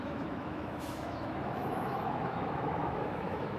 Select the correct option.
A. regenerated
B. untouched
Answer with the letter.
A